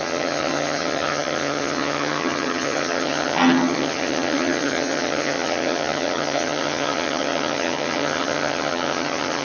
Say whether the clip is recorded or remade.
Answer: remade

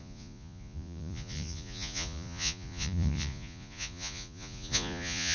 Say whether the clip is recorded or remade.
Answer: remade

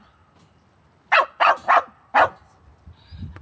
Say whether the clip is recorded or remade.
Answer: recorded